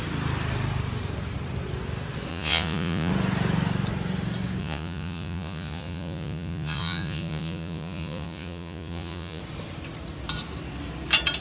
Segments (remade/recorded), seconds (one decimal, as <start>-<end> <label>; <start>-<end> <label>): 0.0-2.3 recorded; 2.3-3.1 remade; 3.1-4.6 recorded; 4.6-9.4 remade; 9.4-11.4 recorded